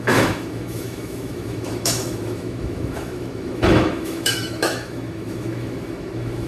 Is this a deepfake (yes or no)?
yes